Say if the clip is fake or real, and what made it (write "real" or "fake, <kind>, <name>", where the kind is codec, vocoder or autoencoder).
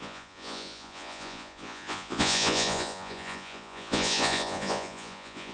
fake, vocoder, Vocos